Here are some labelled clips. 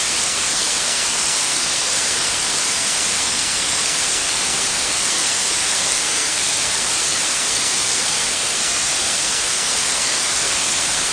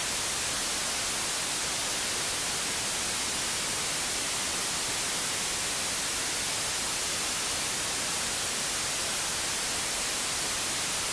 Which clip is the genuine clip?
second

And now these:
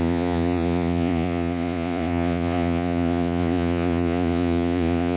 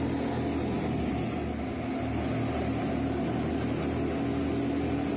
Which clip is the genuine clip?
second